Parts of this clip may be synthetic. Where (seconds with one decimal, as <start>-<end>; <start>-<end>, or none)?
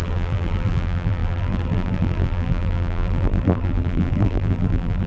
0.0-5.1